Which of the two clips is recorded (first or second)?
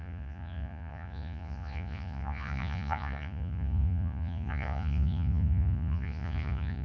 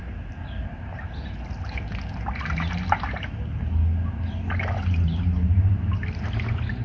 second